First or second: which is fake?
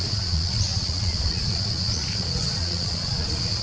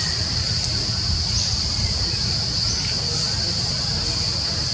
first